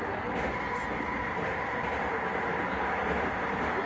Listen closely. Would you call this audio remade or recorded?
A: recorded